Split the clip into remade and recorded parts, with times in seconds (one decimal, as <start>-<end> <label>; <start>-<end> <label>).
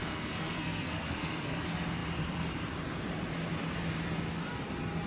0.0-1.6 remade; 1.6-5.1 recorded